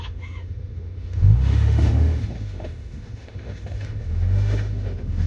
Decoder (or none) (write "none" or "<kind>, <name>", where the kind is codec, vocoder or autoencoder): autoencoder, DAC-VAE